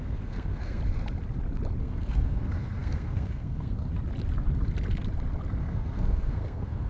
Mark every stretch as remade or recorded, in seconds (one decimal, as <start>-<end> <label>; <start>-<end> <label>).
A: 0.0-0.8 remade; 0.8-1.8 recorded; 1.8-3.9 remade; 3.9-5.6 recorded; 5.6-6.9 remade